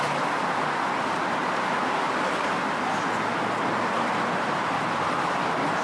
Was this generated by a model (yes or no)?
no